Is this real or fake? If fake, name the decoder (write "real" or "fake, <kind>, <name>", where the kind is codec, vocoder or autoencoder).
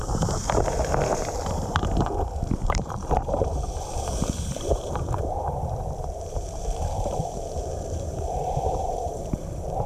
fake, vocoder, BigVGAN v2